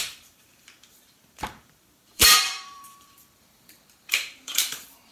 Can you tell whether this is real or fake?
fake